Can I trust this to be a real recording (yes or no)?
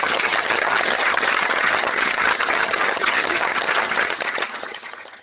no